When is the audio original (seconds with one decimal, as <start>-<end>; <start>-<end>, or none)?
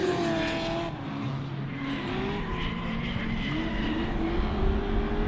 0.0-5.3